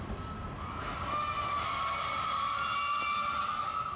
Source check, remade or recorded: recorded